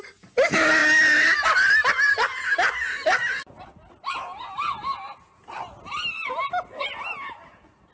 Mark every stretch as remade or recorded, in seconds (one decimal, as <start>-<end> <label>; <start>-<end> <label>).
0.0-7.9 recorded